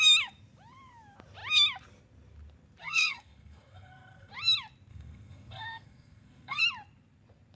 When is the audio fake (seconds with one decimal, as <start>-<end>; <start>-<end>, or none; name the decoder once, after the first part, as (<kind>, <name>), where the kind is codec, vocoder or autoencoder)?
2.8-4.3 (codec, SNAC); 4.9-6.6